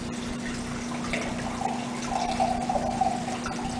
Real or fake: real